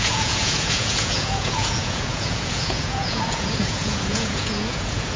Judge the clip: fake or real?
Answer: fake